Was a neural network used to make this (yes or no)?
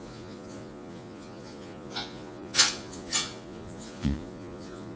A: yes